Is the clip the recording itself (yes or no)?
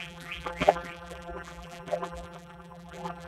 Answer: no